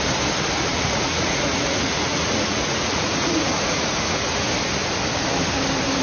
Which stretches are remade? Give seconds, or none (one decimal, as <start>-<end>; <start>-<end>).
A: 0.7-4.3